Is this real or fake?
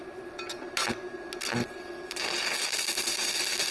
real